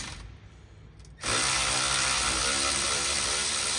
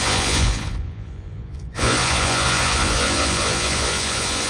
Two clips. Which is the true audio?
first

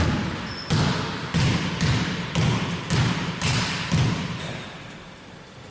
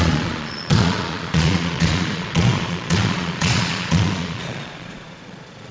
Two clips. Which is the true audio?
first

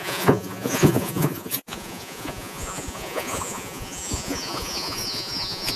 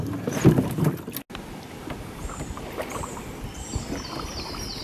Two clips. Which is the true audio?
second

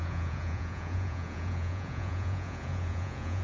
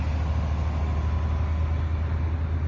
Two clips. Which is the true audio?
second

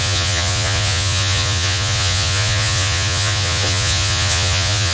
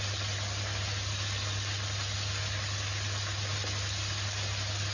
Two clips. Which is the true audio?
second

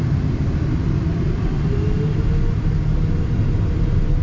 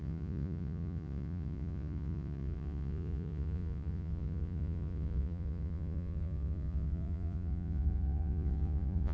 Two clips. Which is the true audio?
first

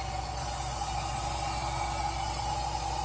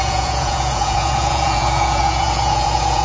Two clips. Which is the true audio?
first